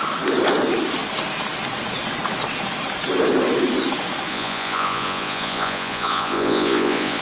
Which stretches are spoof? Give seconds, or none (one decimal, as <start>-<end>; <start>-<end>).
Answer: 4.3-7.2